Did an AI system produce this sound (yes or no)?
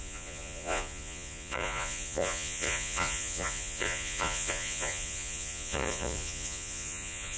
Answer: yes